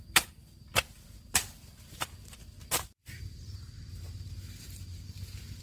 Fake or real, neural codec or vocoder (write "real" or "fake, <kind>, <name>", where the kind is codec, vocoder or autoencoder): fake, vocoder, BigVGAN v2